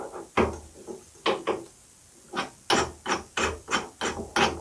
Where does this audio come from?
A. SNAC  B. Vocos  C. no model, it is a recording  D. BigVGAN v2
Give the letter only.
C